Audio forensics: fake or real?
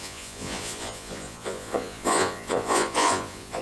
fake